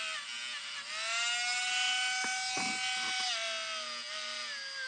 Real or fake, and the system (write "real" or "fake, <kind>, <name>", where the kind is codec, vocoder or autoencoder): real